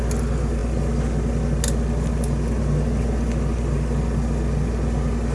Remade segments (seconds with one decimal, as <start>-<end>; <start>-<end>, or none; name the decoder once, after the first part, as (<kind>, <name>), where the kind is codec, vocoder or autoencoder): none